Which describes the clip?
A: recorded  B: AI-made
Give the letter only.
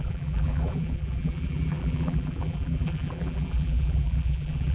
B